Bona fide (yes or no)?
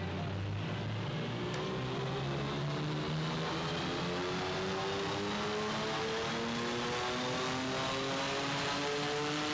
yes